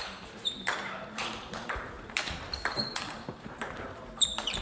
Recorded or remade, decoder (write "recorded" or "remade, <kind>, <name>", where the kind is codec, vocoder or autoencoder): remade, vocoder, BigVGAN v2